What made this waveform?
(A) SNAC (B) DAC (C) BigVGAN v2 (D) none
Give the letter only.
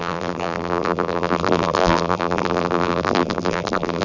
C